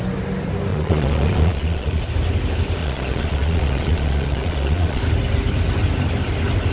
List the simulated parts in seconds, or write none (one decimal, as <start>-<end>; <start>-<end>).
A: 0.7-2.0; 2.8-5.0